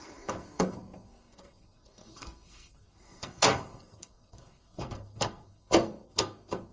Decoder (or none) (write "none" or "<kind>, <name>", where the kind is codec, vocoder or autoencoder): codec, SNAC